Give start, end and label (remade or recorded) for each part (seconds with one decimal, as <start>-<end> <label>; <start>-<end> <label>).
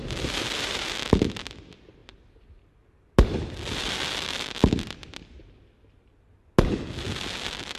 0.0-1.0 remade; 1.0-7.8 recorded